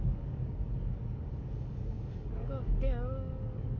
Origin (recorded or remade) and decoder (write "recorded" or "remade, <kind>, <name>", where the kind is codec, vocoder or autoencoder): remade, codec, DAC